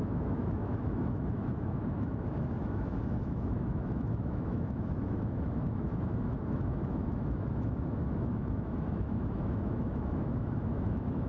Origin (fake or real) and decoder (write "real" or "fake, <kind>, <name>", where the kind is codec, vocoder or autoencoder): fake, autoencoder, DAC-VAE